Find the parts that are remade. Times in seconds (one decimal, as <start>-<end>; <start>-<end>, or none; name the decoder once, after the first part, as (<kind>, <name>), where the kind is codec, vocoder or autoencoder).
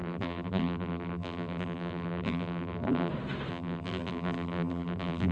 0.0-3.1 (vocoder, BigVGAN v2); 3.5-5.3